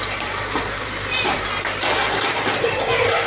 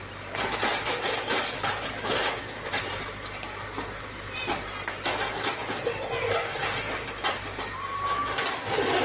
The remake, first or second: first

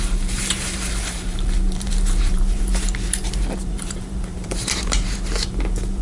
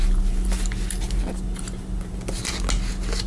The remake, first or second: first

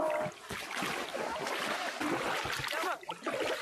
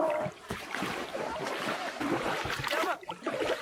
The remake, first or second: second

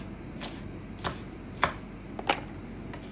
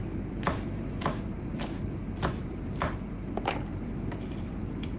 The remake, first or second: second